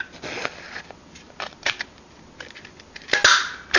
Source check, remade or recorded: recorded